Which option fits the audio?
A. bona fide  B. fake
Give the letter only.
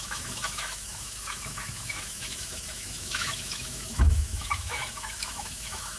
B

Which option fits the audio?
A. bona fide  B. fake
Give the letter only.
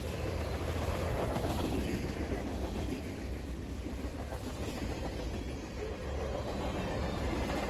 A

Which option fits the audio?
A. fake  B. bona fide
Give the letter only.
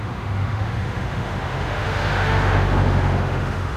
A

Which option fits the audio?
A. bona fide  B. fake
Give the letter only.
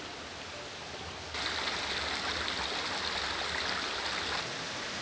A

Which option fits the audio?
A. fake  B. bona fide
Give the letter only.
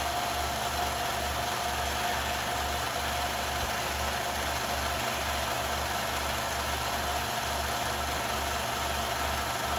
B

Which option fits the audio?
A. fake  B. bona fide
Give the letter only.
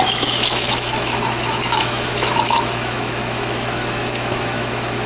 A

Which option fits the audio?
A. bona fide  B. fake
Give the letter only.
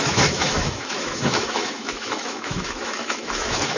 B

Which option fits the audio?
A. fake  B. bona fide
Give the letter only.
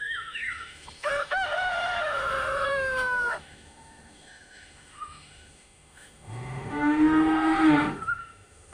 A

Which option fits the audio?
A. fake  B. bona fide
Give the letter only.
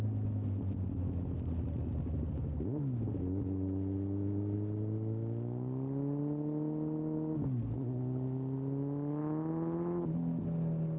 B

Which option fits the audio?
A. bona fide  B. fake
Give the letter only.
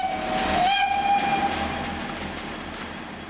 A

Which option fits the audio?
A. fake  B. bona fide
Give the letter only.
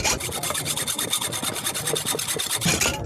B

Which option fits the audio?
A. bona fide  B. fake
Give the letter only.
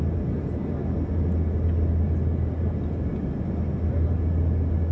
A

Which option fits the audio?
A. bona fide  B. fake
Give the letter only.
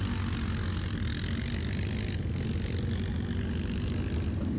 A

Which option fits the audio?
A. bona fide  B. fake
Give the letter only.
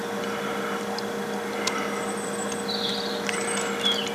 A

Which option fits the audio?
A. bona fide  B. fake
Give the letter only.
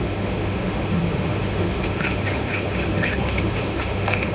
B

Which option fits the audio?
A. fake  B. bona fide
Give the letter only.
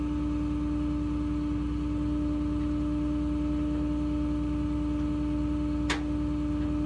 B